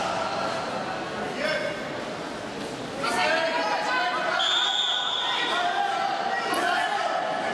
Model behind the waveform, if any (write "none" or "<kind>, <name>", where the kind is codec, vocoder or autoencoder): none